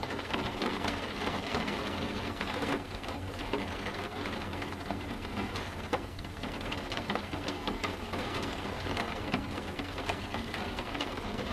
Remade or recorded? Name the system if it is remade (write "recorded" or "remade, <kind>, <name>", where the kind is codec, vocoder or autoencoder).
remade, codec, SNAC